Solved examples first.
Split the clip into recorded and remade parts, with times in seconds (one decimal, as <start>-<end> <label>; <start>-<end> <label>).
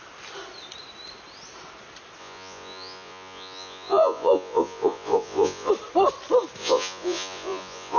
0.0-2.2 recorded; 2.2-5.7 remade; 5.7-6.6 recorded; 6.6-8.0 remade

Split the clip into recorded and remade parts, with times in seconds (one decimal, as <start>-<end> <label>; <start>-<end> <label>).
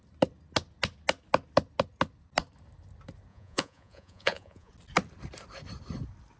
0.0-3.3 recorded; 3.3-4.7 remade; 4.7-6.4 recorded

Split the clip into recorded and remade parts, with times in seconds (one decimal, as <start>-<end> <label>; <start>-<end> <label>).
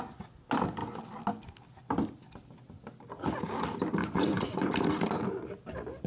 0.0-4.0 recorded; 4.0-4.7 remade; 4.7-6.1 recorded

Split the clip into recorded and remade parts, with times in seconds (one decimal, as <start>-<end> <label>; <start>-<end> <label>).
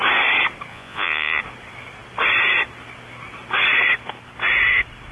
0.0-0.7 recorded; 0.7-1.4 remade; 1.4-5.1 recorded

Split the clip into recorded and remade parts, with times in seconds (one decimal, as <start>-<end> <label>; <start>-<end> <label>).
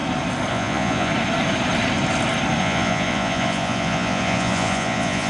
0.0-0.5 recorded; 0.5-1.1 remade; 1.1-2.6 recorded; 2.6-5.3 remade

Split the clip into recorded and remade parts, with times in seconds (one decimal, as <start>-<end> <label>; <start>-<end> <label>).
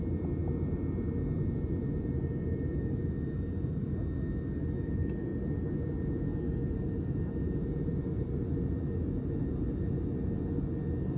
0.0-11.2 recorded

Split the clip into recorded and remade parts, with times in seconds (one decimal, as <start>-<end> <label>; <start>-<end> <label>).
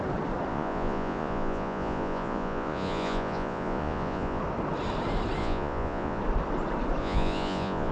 0.0-0.5 recorded; 0.5-4.4 remade; 4.4-5.4 recorded; 5.4-6.2 remade; 6.2-7.0 recorded; 7.0-7.9 remade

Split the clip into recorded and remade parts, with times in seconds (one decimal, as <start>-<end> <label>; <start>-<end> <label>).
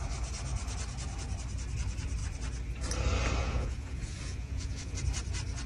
0.0-3.4 recorded; 3.4-5.0 remade; 5.0-5.7 recorded